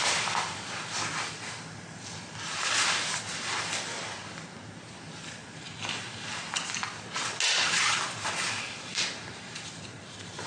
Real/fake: real